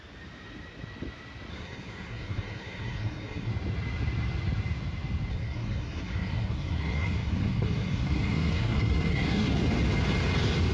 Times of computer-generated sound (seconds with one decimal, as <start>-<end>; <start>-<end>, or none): 1.5-3.5; 5.3-9.5